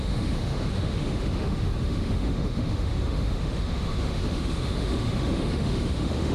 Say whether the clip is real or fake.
fake